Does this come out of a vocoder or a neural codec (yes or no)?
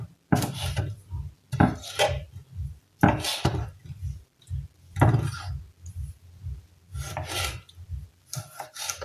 no